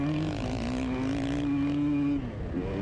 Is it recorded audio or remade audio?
recorded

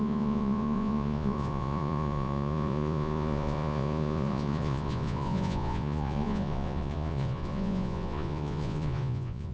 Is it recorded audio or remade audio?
remade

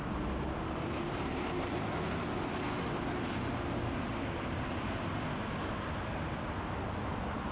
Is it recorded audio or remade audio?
recorded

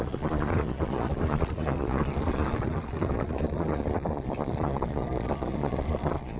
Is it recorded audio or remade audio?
remade